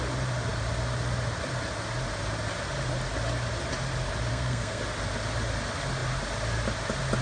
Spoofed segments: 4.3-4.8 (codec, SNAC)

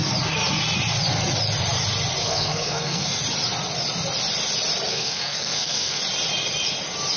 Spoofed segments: 2.2-3.2 (codec, SNAC); 4.9-6.0

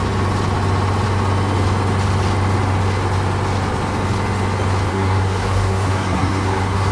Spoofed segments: 4.9-6.9 (codec, SNAC)

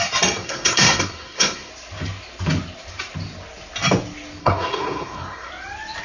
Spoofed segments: 0.4-1.7 (codec, SNAC); 4.4-5.5

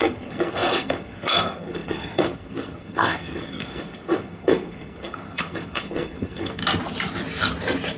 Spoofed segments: 0.0-6.6 (codec, SNAC)